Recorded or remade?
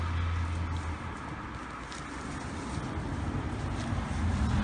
recorded